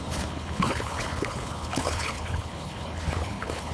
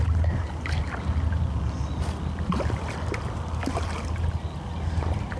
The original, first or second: second